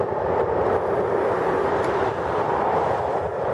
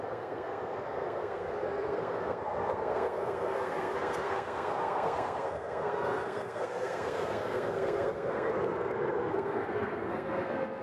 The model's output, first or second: second